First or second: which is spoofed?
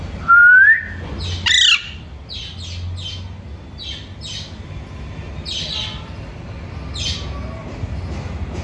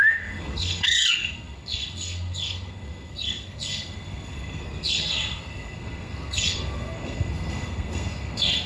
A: second